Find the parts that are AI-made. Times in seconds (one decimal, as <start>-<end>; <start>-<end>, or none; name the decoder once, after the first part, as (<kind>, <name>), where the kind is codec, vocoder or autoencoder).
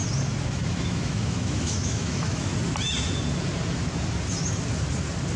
0.5-2.5 (autoencoder, DAC-VAE)